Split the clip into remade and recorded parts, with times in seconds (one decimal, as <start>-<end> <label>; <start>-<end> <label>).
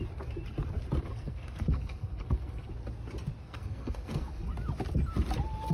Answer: 0.0-1.1 recorded; 1.1-2.7 remade; 2.7-3.4 recorded; 3.4-4.5 remade; 4.5-5.7 recorded